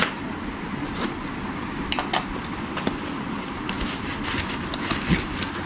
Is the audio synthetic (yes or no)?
no